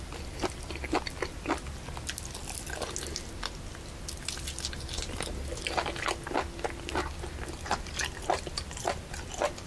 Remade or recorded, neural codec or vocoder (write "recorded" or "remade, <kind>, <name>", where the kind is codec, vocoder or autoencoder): recorded